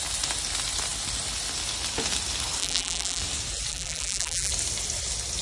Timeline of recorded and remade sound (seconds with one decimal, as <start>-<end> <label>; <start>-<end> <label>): 0.0-2.6 recorded; 2.6-3.2 remade; 3.2-3.7 recorded; 3.7-4.5 remade; 4.5-5.4 recorded